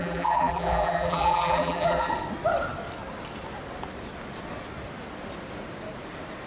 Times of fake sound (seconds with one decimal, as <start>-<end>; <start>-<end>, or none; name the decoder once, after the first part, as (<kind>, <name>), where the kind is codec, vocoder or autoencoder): 0.0-2.1 (vocoder, BigVGAN v2)